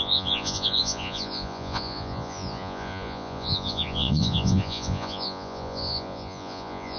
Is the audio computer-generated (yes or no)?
yes